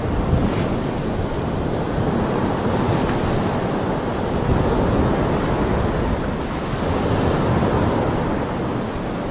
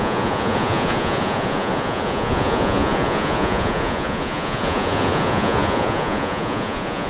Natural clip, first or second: first